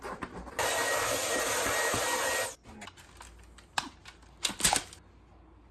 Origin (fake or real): real